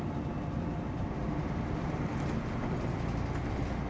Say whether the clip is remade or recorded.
recorded